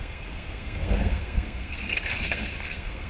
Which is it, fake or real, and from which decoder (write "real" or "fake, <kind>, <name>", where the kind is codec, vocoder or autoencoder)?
fake, codec, SNAC